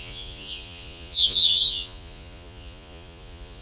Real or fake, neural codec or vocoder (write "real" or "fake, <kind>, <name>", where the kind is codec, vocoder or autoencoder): fake, vocoder, Vocos